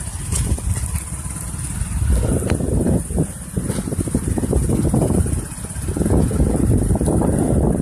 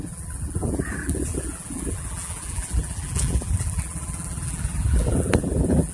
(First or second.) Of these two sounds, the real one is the first